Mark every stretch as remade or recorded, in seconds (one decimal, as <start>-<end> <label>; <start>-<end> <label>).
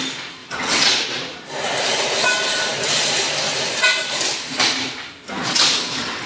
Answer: 0.0-0.4 recorded; 0.4-0.9 remade; 0.9-6.3 recorded